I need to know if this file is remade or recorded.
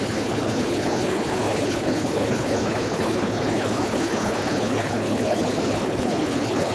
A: remade